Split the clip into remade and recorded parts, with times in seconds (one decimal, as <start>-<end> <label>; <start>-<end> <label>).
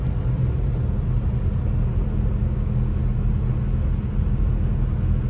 0.0-2.4 recorded; 2.4-3.0 remade; 3.0-5.3 recorded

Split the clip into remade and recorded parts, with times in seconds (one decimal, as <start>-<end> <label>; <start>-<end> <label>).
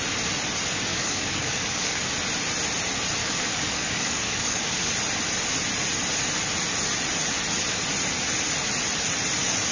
0.0-0.9 recorded; 0.9-2.0 remade; 2.0-3.2 recorded; 3.2-4.9 remade; 4.9-9.7 recorded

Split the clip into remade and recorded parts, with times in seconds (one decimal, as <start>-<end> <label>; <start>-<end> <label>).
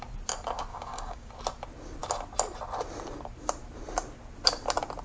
0.0-0.7 recorded; 0.7-1.3 remade; 1.3-5.0 recorded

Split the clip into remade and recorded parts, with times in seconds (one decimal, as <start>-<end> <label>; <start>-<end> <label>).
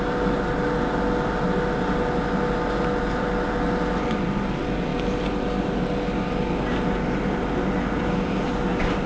0.0-9.1 recorded